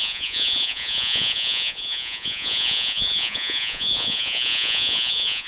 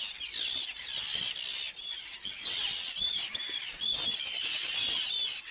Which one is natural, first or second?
second